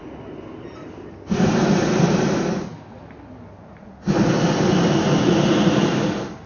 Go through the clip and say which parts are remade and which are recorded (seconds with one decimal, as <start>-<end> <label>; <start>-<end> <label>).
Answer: 0.0-6.5 recorded